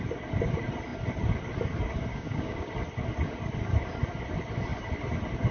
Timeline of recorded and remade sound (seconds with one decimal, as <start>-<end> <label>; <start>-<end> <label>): 0.0-2.1 recorded; 2.1-2.7 remade; 2.7-5.5 recorded